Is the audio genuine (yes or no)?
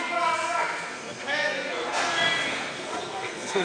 no